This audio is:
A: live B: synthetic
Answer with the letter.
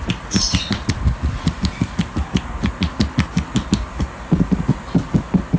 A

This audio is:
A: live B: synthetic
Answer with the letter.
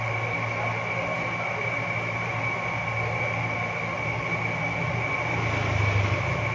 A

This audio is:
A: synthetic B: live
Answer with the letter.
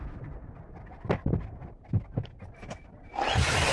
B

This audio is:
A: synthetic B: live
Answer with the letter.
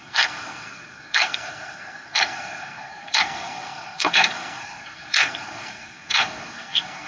A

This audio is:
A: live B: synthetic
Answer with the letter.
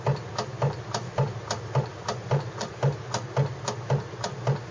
A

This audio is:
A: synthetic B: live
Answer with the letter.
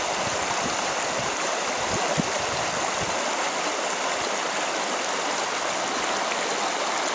B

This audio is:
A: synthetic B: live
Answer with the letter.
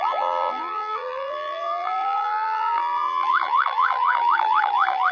A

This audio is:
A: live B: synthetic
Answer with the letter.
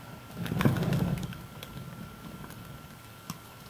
B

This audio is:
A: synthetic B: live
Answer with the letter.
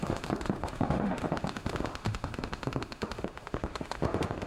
A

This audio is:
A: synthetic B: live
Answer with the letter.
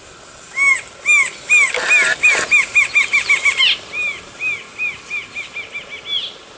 B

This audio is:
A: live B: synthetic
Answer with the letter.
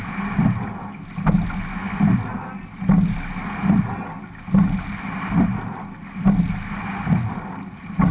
A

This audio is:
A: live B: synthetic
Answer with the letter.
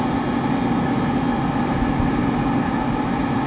A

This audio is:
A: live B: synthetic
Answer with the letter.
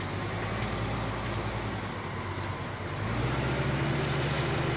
A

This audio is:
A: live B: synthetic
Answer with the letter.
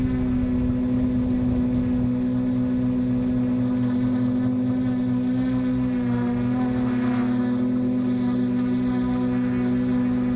A